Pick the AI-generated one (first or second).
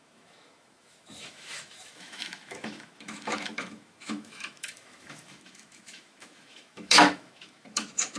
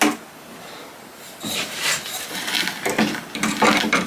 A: first